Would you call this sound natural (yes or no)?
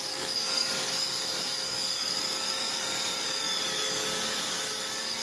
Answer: no